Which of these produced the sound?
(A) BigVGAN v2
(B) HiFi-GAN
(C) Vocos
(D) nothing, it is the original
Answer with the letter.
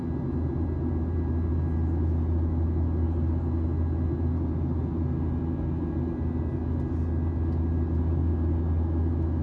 D